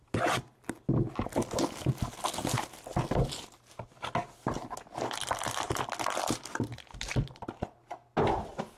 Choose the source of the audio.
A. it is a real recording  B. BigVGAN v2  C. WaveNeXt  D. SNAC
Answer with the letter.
A